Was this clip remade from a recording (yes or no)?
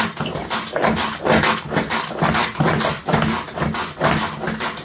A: no